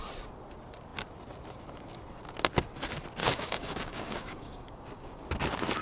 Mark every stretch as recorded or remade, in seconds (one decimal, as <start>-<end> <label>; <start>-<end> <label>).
0.0-3.2 recorded; 3.2-5.2 remade; 5.2-5.8 recorded